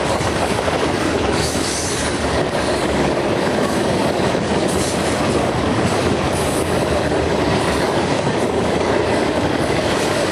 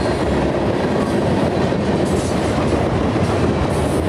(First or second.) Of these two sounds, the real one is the second